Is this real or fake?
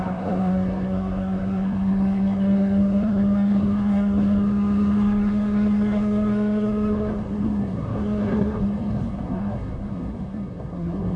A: fake